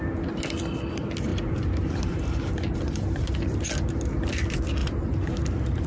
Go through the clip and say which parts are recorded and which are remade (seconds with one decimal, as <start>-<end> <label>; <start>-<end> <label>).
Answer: 0.0-1.3 recorded; 1.3-3.7 remade; 3.7-4.8 recorded; 4.8-5.5 remade; 5.5-5.9 recorded